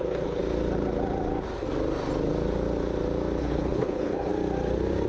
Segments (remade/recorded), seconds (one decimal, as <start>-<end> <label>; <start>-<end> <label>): 0.0-0.4 remade; 0.4-3.4 recorded; 3.4-4.3 remade; 4.3-5.1 recorded